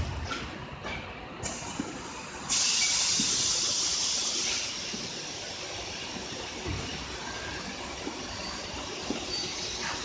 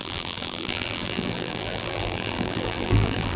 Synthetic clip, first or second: second